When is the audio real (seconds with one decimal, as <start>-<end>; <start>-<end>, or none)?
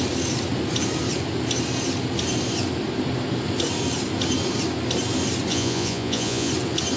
0.0-5.5; 6.5-7.0